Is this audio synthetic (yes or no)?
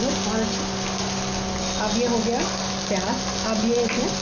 no